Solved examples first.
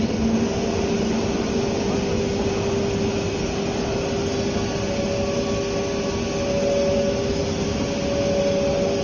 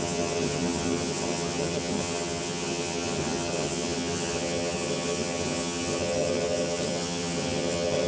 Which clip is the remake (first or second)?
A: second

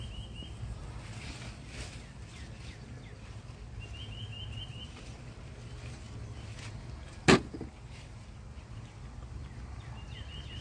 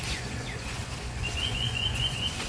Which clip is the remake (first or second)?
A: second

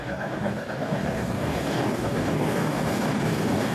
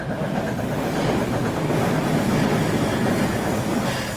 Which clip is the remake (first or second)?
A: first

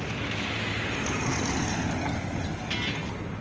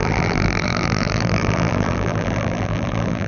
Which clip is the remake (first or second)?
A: second